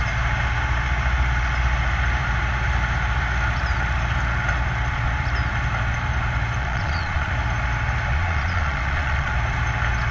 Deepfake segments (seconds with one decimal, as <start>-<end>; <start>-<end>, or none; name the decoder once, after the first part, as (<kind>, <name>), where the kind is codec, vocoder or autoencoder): 6.6-7.3 (vocoder, Vocos); 8.1-9.3